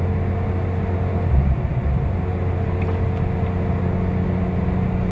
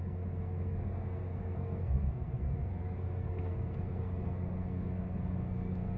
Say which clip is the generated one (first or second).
second